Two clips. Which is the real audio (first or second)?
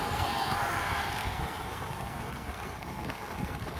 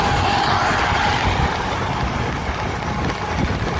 second